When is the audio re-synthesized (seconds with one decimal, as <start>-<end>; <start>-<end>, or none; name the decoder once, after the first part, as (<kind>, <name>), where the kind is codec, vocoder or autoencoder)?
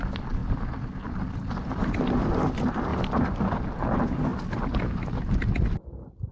none